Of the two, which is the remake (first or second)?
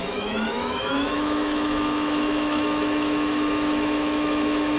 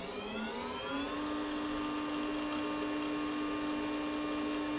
first